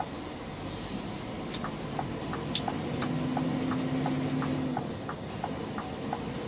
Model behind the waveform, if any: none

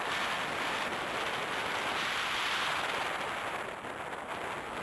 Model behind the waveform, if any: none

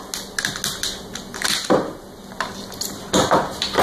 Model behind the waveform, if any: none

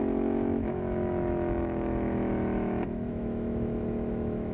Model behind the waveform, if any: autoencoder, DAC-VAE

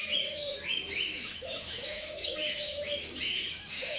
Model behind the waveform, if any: autoencoder, DAC-VAE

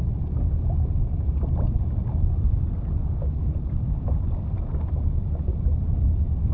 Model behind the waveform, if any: none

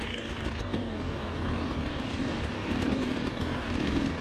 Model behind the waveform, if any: codec, DAC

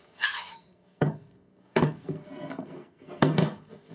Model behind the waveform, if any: codec, SNAC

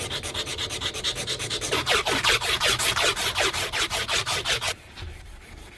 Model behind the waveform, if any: vocoder, BigVGAN v2